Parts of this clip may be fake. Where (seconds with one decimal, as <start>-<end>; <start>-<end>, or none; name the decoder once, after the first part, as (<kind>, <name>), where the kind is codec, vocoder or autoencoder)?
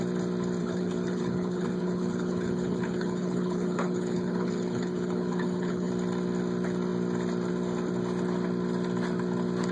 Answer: 0.6-5.9 (codec, HILCodec)